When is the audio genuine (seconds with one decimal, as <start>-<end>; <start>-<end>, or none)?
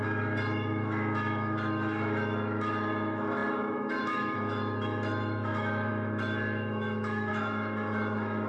none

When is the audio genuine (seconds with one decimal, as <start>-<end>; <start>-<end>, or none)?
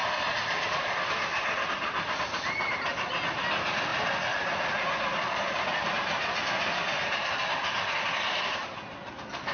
0.0-9.5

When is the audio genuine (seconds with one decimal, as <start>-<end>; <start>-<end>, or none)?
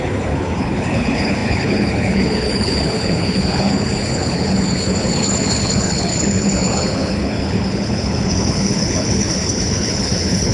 none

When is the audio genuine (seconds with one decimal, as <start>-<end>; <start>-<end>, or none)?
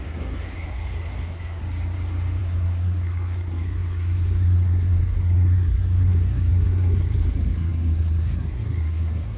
1.6-2.4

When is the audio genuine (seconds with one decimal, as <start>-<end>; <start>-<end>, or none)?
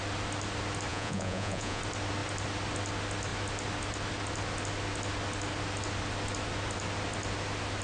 0.0-0.9; 1.8-7.8